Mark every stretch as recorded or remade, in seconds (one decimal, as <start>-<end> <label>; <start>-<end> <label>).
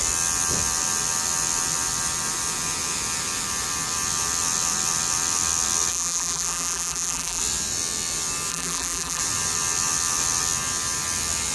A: 0.0-5.9 recorded; 5.9-7.4 remade; 7.4-8.5 recorded; 8.5-9.2 remade; 9.2-11.5 recorded